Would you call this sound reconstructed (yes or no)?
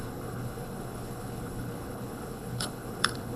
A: yes